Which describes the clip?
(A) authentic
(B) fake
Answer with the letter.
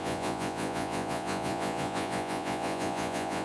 B